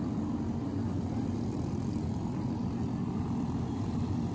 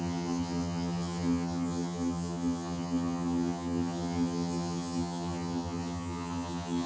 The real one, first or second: first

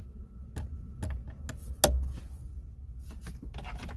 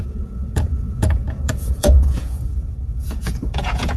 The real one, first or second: first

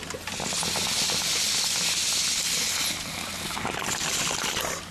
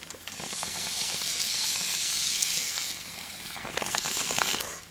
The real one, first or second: first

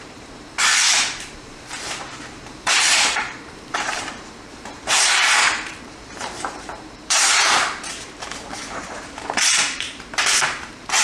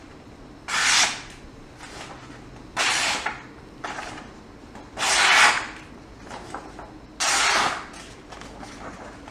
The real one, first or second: second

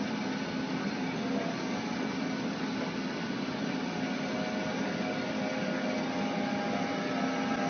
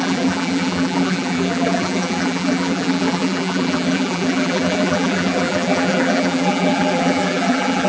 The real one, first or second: first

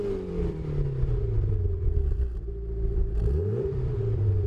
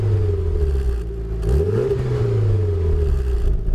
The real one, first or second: second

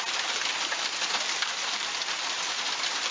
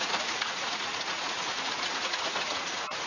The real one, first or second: first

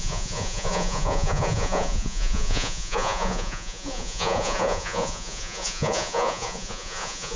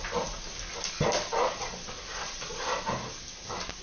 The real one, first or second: second